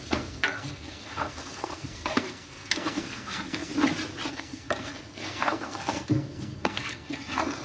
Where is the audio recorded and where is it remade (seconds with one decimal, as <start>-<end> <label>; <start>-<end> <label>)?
0.0-3.7 remade; 3.7-4.3 recorded; 4.3-7.6 remade